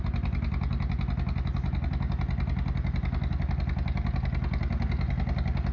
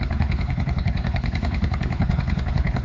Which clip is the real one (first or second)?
first